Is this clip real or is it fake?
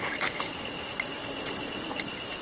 real